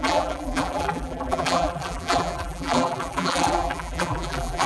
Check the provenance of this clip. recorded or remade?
remade